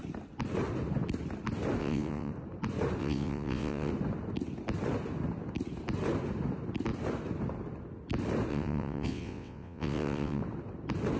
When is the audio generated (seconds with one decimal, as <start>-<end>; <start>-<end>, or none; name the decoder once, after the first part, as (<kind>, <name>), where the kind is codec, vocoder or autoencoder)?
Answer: 1.8-2.3 (vocoder, WaveNeXt); 3.0-3.9; 8.5-10.4